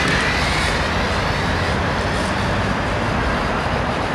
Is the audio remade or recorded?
recorded